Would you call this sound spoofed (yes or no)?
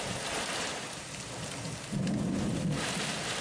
no